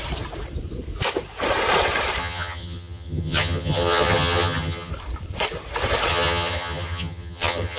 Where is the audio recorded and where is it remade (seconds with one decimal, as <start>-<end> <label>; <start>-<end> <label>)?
0.0-2.2 recorded; 2.2-4.9 remade; 4.9-6.1 recorded; 6.1-7.8 remade